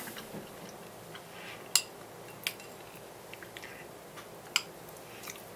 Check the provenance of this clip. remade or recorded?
recorded